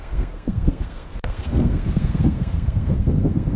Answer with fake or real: fake